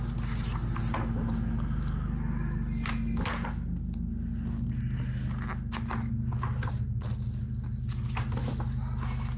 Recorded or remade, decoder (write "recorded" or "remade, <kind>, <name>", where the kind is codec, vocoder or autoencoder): recorded